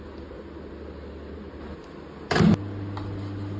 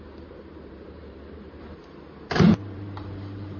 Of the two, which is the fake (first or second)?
second